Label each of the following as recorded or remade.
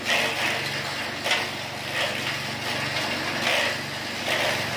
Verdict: recorded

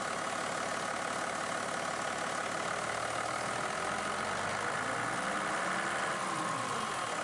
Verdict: recorded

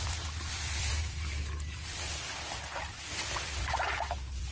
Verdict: recorded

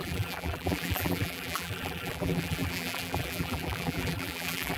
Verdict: remade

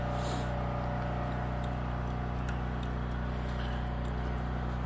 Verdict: recorded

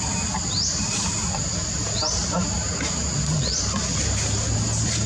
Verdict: recorded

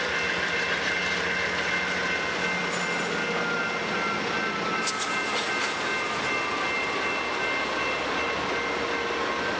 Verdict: recorded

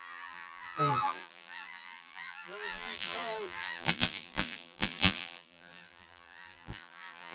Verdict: remade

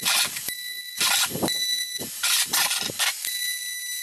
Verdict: recorded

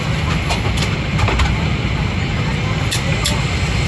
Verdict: recorded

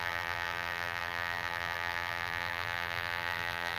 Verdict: remade